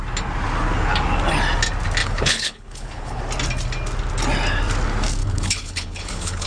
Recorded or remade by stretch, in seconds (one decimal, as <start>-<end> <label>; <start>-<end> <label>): 0.0-2.0 recorded; 2.0-3.2 remade; 3.2-5.2 recorded; 5.2-6.5 remade